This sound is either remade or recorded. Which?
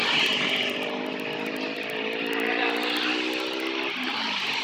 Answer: remade